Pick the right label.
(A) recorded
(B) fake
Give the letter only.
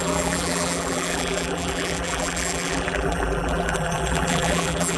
B